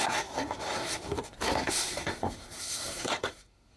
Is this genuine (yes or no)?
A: no